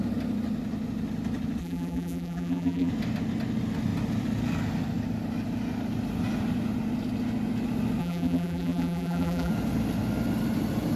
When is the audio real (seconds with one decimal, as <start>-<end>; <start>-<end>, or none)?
0.0-1.6; 2.9-8.0; 9.5-11.0